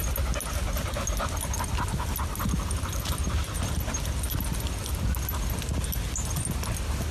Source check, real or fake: real